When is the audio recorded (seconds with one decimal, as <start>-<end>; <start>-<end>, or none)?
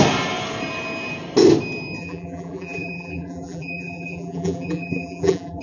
0.0-2.0